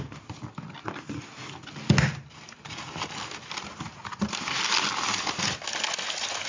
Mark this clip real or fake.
real